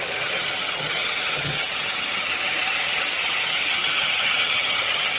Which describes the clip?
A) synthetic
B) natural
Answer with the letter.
A